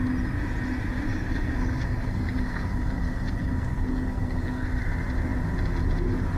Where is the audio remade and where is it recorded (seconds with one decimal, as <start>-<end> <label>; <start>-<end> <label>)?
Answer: 0.0-1.1 recorded; 1.1-4.8 remade; 4.8-6.4 recorded